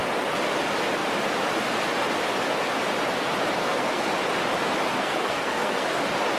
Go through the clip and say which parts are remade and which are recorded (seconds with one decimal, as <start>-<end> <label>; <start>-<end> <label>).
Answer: 0.0-3.6 recorded; 3.6-4.1 remade; 4.1-4.9 recorded; 4.9-6.0 remade; 6.0-6.4 recorded